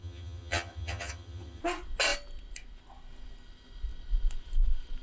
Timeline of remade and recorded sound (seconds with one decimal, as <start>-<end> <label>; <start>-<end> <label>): 0.0-1.6 remade; 1.6-5.0 recorded